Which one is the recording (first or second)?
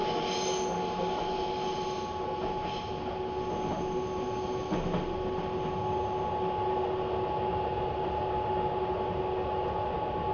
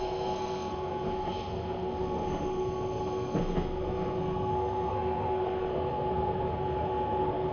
first